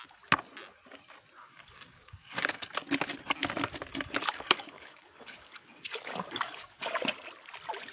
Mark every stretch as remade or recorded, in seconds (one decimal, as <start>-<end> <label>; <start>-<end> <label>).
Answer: 0.0-1.4 recorded; 1.4-2.7 remade; 2.7-3.9 recorded; 3.9-7.0 remade; 7.0-7.9 recorded